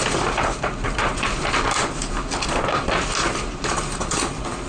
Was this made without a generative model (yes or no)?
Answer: no